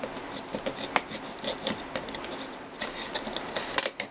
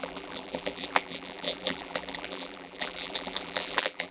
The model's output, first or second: second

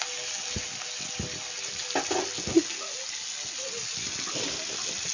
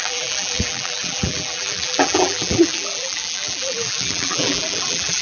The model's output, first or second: second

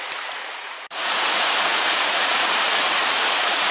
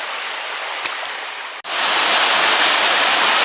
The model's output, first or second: first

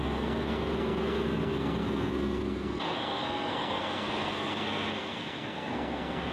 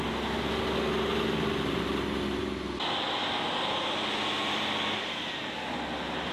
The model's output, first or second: first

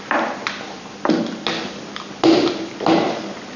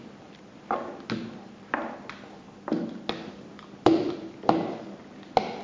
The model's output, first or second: first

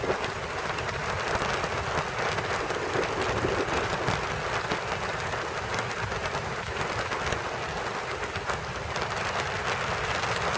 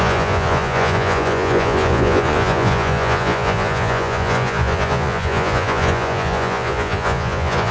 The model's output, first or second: second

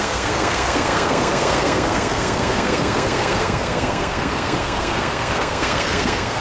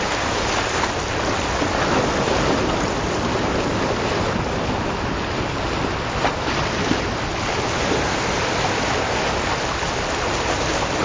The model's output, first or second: first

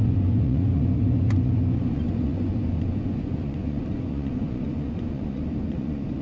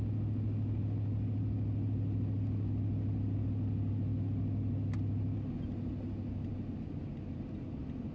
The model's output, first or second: first